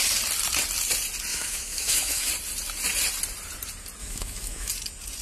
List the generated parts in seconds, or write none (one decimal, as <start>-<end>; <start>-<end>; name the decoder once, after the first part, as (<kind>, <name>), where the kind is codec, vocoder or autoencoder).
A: 1.3-2.3 (autoencoder, DAC-VAE); 4.0-4.7